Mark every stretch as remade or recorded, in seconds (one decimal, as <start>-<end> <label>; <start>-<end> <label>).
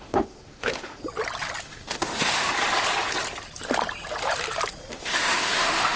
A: 0.0-1.0 remade; 1.0-1.6 recorded; 1.6-2.5 remade; 2.5-4.9 recorded; 4.9-6.0 remade